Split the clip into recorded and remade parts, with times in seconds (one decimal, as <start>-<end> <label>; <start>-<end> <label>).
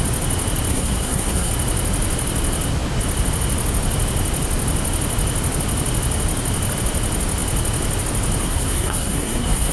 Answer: 0.0-0.7 recorded; 0.7-1.5 remade; 1.5-8.4 recorded; 8.4-9.7 remade